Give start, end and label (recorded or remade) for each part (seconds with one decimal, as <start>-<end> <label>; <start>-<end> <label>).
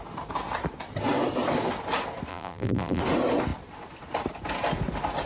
0.0-2.3 recorded; 2.3-3.0 remade; 3.0-5.3 recorded